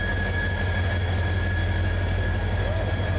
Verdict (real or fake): real